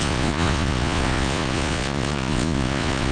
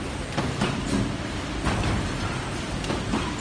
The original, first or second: second